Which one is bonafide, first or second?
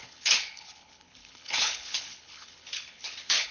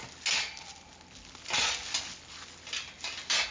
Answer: second